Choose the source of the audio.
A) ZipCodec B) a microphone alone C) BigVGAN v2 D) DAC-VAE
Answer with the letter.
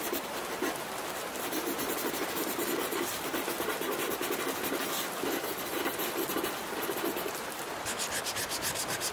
B